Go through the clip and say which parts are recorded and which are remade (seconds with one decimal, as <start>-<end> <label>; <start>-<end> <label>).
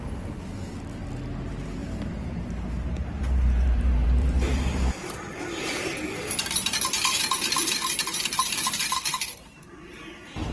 0.0-1.8 recorded; 1.8-5.8 remade; 5.8-6.6 recorded; 6.6-7.7 remade; 7.7-8.1 recorded; 8.1-9.6 remade; 9.6-10.5 recorded